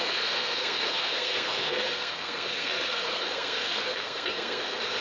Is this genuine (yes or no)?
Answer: no